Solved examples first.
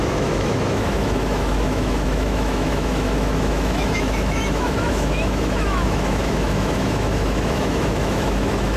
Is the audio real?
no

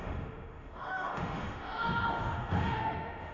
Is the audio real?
no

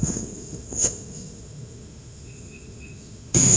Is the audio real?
no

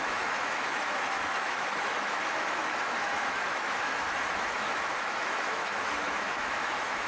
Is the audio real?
no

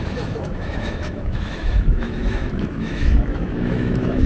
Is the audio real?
no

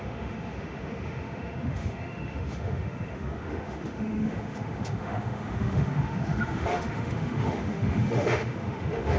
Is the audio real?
no